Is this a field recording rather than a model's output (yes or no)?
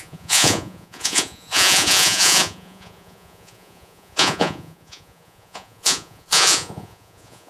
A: no